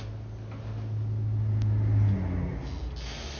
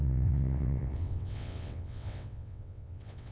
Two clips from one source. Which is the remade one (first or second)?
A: second